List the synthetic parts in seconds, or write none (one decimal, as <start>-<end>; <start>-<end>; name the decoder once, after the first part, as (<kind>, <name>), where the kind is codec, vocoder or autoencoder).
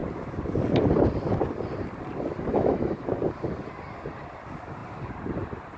2.5-3.1 (autoencoder, DAC-VAE)